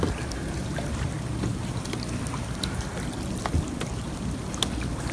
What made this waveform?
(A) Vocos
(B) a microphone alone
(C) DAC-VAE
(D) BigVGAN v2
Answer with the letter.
B